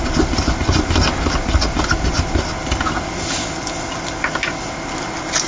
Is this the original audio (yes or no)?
yes